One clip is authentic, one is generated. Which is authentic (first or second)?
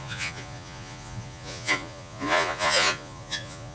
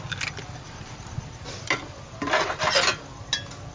second